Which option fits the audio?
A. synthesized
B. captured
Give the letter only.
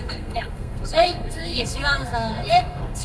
A